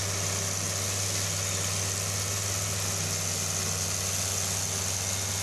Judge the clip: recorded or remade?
recorded